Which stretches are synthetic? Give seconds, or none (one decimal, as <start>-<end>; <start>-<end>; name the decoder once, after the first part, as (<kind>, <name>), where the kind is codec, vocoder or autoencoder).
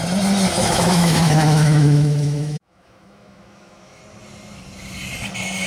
0.6-4.0 (autoencoder, DAC-VAE)